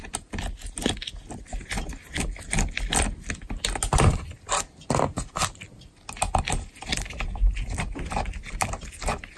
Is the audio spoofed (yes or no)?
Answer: no